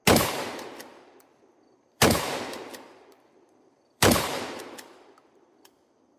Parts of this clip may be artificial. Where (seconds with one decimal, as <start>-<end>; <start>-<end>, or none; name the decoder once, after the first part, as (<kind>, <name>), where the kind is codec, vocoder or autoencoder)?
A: 0.9-4.6 (vocoder, BigVGAN v2)